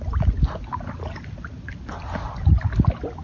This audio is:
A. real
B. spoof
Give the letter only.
A